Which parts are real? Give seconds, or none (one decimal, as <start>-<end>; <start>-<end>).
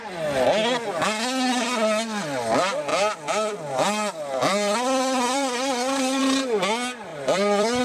0.0-2.9; 6.2-7.1